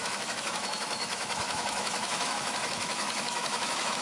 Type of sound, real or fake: fake